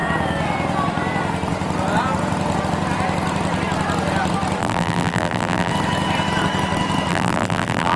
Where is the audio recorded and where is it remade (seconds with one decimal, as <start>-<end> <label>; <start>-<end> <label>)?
0.0-4.6 recorded; 4.6-5.7 remade; 5.7-7.1 recorded; 7.1-8.0 remade